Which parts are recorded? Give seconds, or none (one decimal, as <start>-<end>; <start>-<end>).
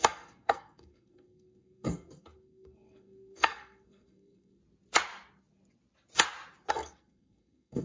4.6-6.7